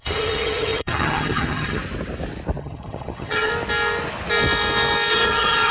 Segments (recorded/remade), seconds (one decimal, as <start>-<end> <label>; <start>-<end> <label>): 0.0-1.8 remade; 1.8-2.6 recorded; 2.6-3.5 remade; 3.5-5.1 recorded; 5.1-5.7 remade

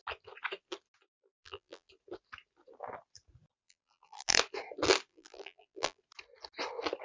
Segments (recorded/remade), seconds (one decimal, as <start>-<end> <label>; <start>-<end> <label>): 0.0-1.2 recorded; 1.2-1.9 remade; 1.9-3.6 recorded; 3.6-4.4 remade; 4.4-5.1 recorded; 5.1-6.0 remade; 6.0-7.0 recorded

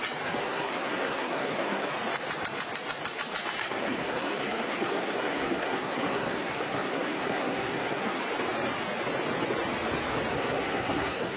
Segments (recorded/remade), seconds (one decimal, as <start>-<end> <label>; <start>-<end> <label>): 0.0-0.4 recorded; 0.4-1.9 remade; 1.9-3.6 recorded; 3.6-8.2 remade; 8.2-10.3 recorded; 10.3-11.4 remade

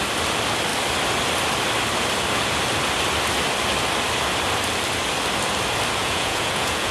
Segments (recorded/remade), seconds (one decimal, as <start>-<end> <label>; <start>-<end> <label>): 0.0-6.0 recorded; 6.0-6.9 remade

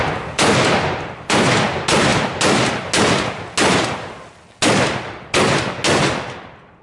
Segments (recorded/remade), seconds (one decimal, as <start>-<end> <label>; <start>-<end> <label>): 0.0-6.8 recorded

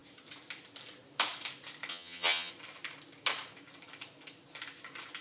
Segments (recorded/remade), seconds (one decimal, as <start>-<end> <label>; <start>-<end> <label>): 0.0-1.9 recorded; 1.9-2.5 remade; 2.5-5.2 recorded

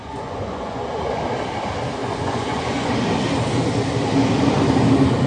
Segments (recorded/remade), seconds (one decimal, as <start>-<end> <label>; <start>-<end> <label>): 0.0-1.2 remade; 1.2-2.0 recorded; 2.0-2.9 remade; 2.9-5.3 recorded

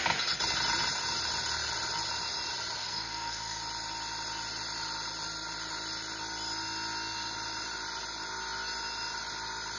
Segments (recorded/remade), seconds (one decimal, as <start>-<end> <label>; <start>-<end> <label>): 0.0-2.8 recorded; 2.8-3.6 remade; 3.6-9.8 recorded